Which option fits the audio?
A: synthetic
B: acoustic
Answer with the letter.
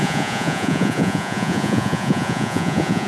A